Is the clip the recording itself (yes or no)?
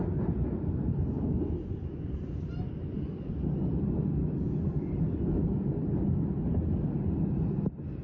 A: yes